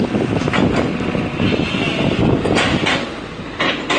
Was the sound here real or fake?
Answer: real